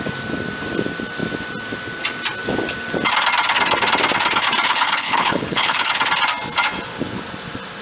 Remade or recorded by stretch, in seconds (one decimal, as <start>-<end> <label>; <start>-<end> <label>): 0.0-4.7 recorded; 4.7-5.9 remade; 5.9-7.8 recorded